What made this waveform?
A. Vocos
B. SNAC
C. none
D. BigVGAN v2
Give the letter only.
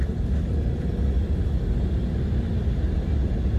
C